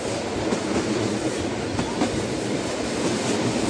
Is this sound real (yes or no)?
yes